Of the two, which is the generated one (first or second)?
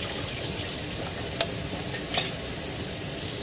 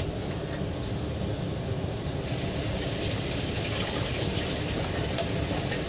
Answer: first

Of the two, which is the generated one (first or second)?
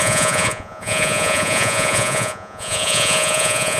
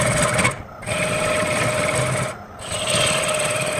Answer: first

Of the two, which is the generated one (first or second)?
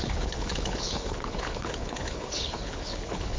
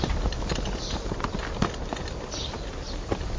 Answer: first